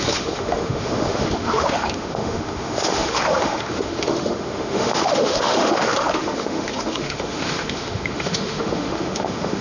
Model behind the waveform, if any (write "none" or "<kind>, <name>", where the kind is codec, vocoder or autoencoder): autoencoder, DAC-VAE